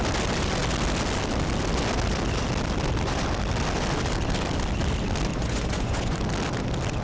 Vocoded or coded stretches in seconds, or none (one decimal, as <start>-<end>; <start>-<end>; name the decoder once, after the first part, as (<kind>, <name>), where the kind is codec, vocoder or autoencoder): 5.3-6.2 (vocoder, Vocos)